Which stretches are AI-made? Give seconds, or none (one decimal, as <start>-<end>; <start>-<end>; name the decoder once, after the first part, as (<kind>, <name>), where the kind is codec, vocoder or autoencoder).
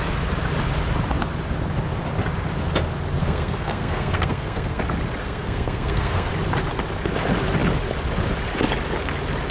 3.2-4.8 (codec, SNAC); 5.2-6.3